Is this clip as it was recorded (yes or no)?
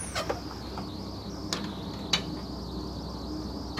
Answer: yes